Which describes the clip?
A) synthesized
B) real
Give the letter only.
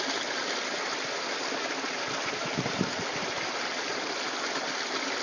B